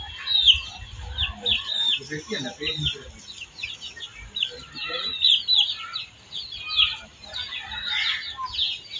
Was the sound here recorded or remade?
recorded